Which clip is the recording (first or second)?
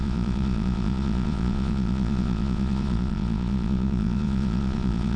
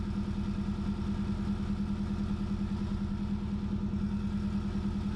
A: second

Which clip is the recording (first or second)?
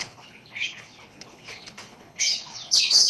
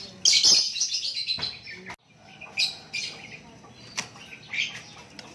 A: second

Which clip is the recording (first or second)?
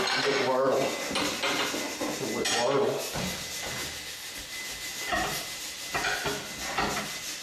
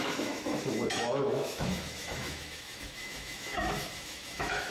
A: first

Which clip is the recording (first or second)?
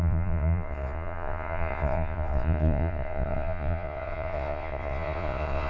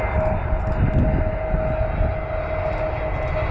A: second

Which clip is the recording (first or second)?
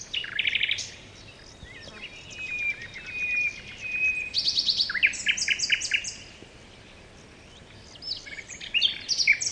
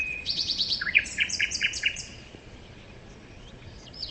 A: first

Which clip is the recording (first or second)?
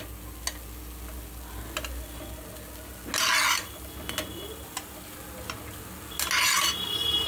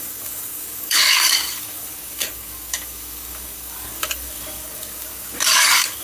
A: first